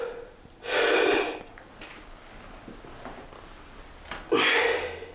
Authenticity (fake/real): real